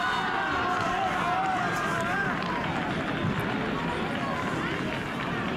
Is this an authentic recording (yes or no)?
yes